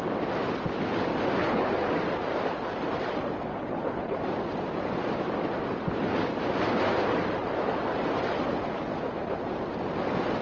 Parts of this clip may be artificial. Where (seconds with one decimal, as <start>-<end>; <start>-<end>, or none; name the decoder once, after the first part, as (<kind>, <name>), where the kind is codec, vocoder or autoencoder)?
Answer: 1.4-1.9 (codec, HILCodec); 3.5-4.2